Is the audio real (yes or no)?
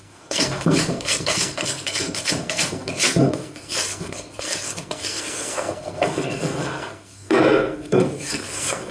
no